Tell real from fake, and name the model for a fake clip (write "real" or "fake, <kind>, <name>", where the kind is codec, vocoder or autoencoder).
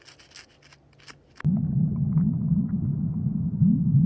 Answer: real